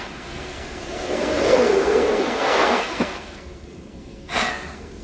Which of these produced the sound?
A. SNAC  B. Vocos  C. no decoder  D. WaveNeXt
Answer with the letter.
A